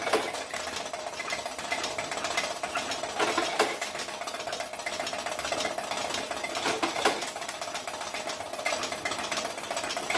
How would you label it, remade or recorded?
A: recorded